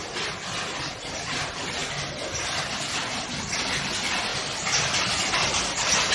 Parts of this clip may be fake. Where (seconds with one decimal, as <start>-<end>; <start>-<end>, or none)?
none